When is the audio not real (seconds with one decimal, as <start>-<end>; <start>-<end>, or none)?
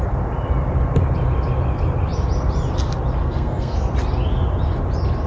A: 3.2-3.9